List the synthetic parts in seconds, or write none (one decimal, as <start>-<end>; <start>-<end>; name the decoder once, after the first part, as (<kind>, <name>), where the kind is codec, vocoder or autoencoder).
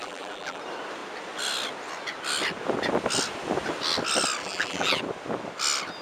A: 0.0-0.6 (vocoder, BigVGAN v2); 4.4-5.0